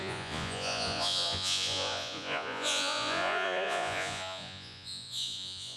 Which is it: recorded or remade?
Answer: remade